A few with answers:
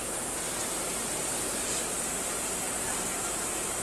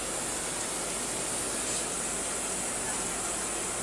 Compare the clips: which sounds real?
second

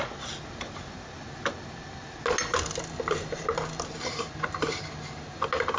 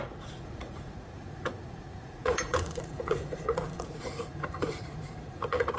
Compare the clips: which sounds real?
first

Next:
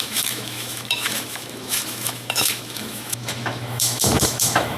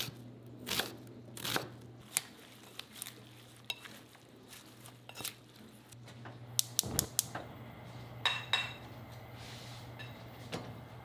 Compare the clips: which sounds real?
second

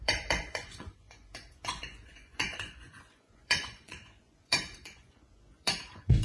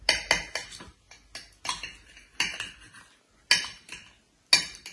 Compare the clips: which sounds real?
second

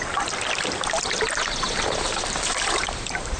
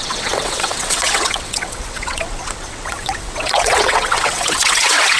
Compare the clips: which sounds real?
first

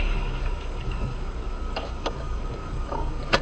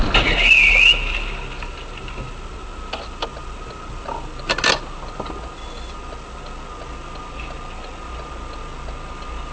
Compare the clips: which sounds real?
second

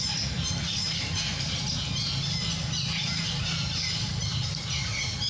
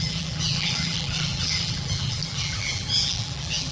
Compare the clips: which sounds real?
first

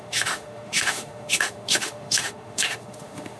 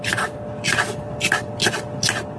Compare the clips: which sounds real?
second